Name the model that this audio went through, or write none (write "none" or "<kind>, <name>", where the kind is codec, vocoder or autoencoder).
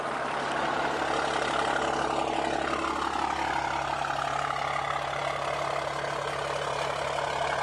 none